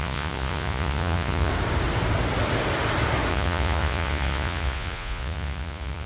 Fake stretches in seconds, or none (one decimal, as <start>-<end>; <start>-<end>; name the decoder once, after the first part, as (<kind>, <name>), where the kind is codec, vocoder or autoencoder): 0.0-1.5 (vocoder, Vocos); 3.3-6.1